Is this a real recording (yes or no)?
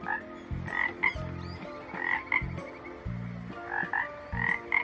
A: yes